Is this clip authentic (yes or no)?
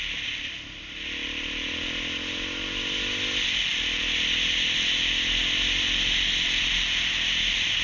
yes